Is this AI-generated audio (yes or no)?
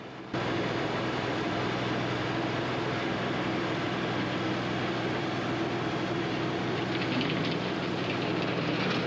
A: no